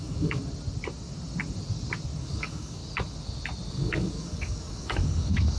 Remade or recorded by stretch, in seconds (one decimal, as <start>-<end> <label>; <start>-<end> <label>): 0.0-0.4 remade; 0.4-2.2 recorded; 2.2-2.8 remade; 2.8-3.7 recorded; 3.7-5.6 remade